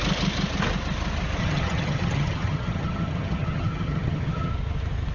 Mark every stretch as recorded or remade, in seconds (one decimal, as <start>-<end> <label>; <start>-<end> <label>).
0.0-1.4 recorded; 1.4-4.5 remade; 4.5-5.1 recorded